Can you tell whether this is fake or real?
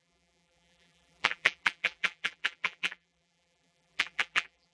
fake